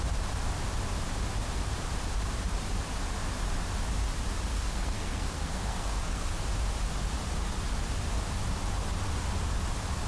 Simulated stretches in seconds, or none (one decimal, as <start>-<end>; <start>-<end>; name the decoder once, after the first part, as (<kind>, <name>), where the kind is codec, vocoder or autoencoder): 4.5-6.3 (codec, SNAC)